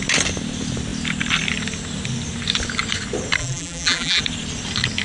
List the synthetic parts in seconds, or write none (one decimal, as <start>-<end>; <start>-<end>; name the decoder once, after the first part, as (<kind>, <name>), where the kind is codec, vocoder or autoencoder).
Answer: 3.4-4.2 (vocoder, BigVGAN v2)